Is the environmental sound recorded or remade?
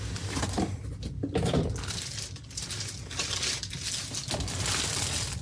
recorded